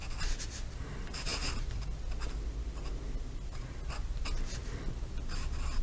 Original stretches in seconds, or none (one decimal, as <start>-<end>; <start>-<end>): 0.0-5.8